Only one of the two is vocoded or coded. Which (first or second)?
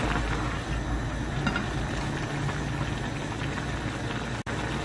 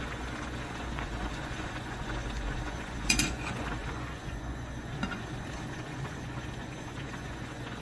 second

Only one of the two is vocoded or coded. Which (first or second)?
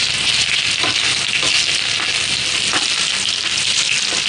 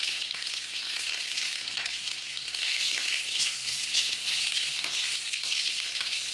second